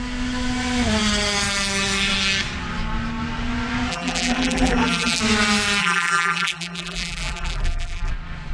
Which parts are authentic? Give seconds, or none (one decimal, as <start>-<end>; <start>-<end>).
0.0-3.9; 5.2-5.8; 8.1-8.5